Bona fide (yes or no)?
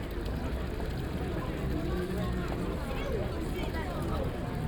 yes